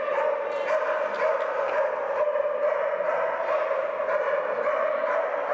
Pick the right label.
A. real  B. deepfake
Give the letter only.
A